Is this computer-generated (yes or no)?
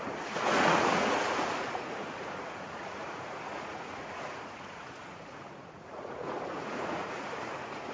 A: yes